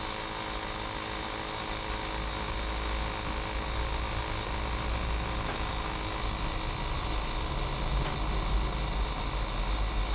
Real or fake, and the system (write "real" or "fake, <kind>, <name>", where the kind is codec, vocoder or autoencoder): real